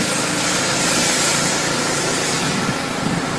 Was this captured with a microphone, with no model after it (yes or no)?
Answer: no